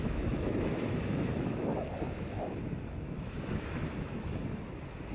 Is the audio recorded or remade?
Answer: remade